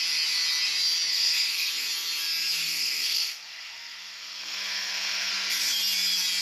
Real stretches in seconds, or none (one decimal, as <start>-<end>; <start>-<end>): 0.0-1.1; 1.7-2.6; 5.3-6.4